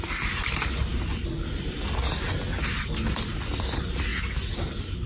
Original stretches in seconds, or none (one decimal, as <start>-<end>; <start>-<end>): 0.0-5.1